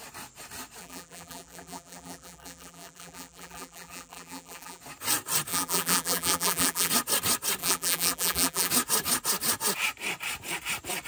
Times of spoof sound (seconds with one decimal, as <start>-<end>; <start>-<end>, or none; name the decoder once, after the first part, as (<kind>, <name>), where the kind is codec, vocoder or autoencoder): 0.8-4.8 (vocoder, BigVGAN v2); 5.5-6.9; 7.6-8.7